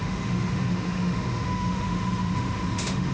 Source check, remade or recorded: remade